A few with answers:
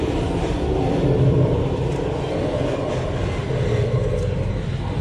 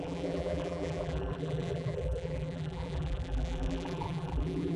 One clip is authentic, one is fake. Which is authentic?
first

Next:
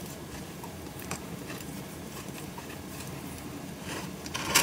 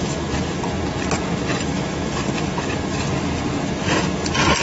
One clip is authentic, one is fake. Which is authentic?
second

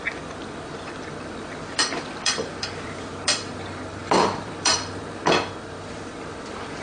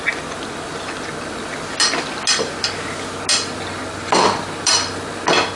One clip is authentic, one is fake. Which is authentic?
second